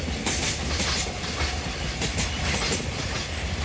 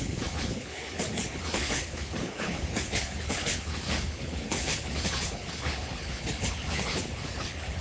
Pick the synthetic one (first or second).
second